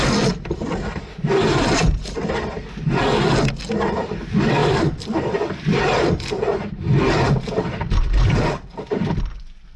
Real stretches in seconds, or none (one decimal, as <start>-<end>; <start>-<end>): 0.0-4.6; 9.3-9.8